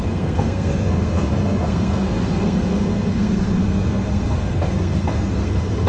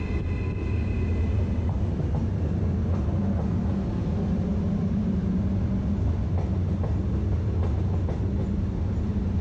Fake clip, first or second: first